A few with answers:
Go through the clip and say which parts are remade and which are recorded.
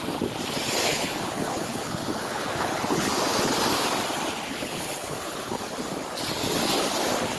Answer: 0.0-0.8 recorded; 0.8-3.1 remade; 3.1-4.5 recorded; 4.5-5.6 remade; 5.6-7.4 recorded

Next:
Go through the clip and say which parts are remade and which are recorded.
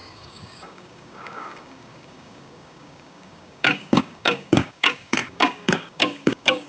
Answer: 0.0-6.7 remade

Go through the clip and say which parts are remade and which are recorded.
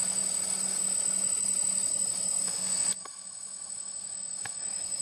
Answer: 0.0-2.5 remade; 2.5-3.0 recorded; 3.0-5.0 remade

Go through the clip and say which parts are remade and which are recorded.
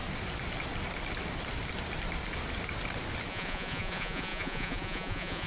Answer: 0.0-3.3 recorded; 3.3-5.5 remade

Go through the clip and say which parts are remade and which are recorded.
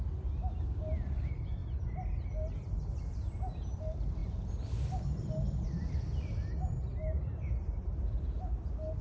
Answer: 0.0-9.0 recorded